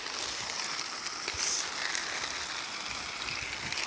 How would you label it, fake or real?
real